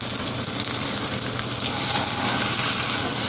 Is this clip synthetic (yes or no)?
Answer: no